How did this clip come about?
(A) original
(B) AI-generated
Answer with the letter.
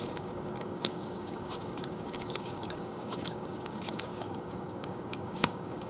B